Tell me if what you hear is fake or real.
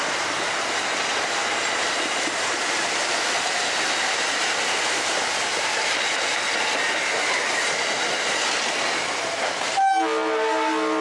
real